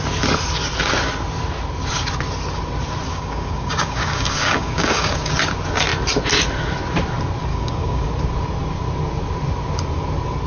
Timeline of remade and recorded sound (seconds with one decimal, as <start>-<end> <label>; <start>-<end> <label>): 0.0-3.1 recorded; 3.1-5.3 remade; 5.3-7.5 recorded; 7.5-8.1 remade; 8.1-10.5 recorded